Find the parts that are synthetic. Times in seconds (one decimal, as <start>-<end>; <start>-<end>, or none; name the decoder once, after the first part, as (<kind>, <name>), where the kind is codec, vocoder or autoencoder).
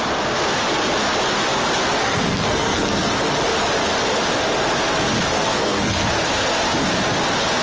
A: 2.0-3.1 (codec, SNAC); 5.3-6.3